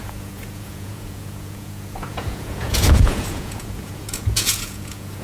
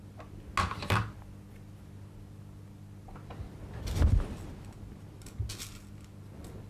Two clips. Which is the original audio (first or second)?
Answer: second